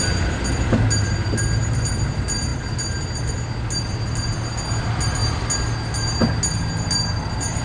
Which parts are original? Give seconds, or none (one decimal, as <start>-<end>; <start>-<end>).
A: 0.0-7.6